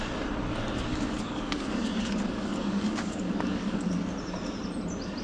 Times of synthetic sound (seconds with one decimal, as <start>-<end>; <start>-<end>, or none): 0.9-4.0